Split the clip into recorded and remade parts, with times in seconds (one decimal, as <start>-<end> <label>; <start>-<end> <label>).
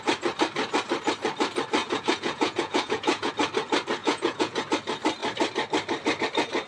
0.0-1.8 recorded; 1.8-3.3 remade; 3.3-4.0 recorded; 4.0-4.6 remade; 4.6-6.7 recorded